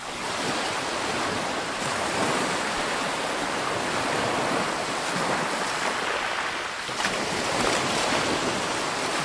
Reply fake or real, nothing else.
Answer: real